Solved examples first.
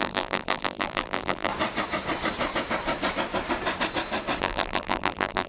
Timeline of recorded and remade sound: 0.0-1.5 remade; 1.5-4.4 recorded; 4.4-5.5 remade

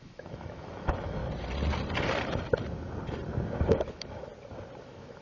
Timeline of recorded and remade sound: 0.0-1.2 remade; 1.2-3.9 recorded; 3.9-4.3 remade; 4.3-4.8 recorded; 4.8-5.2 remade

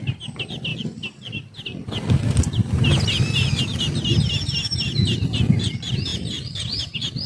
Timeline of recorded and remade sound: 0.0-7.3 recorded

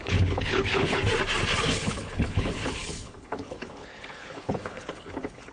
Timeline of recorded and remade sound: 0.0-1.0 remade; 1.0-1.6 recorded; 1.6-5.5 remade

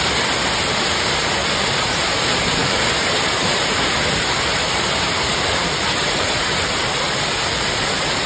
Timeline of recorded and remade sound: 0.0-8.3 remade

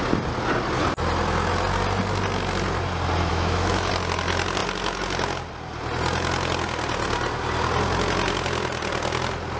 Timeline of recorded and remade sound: 0.0-3.3 recorded; 3.3-3.9 remade; 3.9-9.6 recorded

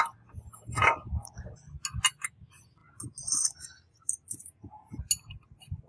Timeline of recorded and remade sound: 0.0-5.9 recorded

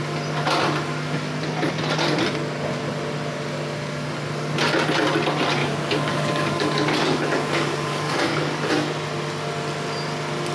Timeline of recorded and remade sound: 0.0-5.6 recorded; 5.6-8.7 remade; 8.7-10.5 recorded